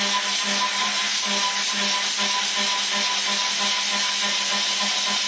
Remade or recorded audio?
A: recorded